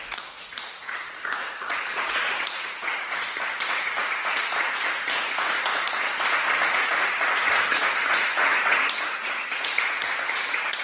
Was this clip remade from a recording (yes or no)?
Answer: yes